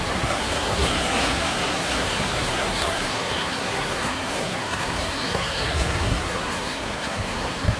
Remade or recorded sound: remade